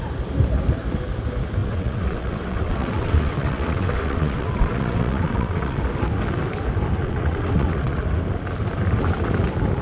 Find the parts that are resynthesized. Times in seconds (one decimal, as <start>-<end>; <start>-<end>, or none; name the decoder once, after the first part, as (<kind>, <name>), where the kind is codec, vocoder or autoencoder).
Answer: 1.6-5.8 (vocoder, WaveNeXt); 7.0-8.0